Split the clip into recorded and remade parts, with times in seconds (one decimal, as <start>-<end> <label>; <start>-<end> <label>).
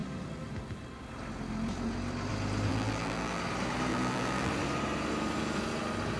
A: 0.0-2.7 recorded; 2.7-3.4 remade; 3.4-3.9 recorded; 3.9-4.5 remade; 4.5-6.2 recorded